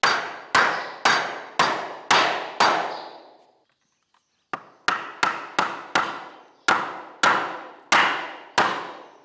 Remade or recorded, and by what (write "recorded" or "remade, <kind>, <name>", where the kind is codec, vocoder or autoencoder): recorded